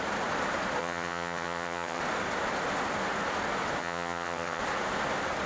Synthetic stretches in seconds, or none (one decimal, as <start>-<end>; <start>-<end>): 0.8-2.0; 3.8-4.6